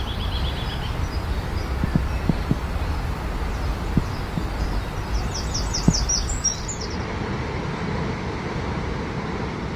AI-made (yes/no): no